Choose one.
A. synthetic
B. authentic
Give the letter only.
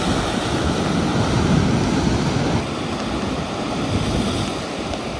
B